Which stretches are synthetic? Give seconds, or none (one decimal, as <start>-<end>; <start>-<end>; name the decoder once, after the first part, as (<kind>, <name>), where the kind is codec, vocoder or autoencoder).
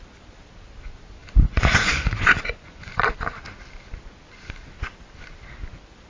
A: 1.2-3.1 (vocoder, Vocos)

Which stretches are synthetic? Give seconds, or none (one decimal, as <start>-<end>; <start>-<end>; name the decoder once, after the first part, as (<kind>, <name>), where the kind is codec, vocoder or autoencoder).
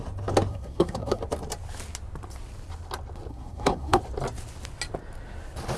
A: 0.5-1.2 (codec, SNAC); 3.3-4.0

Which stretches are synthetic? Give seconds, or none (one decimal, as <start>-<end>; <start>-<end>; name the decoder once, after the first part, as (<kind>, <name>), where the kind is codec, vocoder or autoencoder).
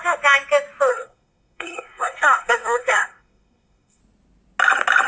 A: 0.9-4.0 (codec, SNAC)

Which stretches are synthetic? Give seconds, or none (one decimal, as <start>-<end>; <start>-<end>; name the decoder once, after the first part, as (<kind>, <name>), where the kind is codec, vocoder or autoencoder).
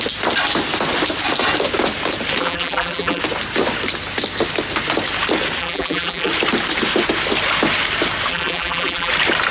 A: 2.4-3.2 (vocoder, BigVGAN v2); 5.6-6.3; 8.3-9.1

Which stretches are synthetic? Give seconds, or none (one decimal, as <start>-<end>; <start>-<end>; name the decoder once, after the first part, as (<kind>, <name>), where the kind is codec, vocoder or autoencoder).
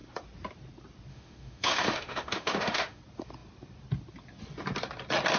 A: 1.1-3.0 (autoencoder, DAC-VAE)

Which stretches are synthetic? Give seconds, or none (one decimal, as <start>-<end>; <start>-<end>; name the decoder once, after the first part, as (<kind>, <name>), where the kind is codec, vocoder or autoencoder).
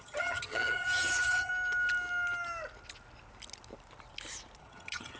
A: 0.0-1.5 (vocoder, HiFi-GAN); 4.6-5.2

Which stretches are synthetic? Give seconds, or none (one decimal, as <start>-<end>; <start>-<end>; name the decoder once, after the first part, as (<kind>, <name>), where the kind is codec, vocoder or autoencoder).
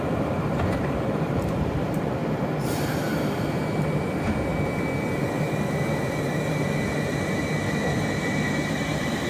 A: 0.0-2.2 (vocoder, BigVGAN v2); 3.8-4.5; 8.3-9.3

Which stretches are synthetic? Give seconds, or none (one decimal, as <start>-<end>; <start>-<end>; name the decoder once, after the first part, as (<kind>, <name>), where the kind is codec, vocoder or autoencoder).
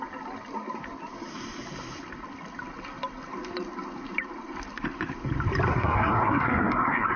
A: 5.7-7.2 (codec, SNAC)